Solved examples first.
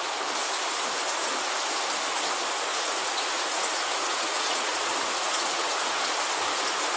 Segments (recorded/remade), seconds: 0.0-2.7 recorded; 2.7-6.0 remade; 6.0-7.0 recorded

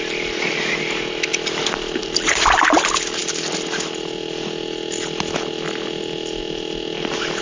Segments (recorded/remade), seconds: 0.0-7.4 recorded

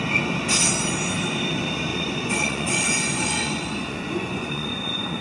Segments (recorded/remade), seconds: 0.0-1.9 recorded; 1.9-5.2 remade

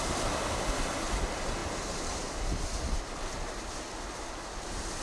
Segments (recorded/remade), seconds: 0.0-5.0 recorded

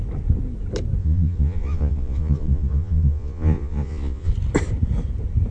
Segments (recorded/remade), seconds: 0.0-1.0 recorded; 1.0-4.3 remade; 4.3-5.5 recorded

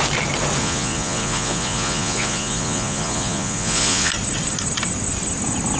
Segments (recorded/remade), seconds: 0.0-0.6 recorded; 0.6-4.1 remade; 4.1-5.8 recorded

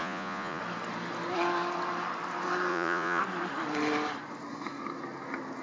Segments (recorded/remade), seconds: 0.0-0.6 remade; 0.6-2.7 recorded; 2.7-3.2 remade; 3.2-5.6 recorded